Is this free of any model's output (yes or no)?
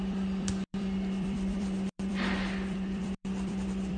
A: no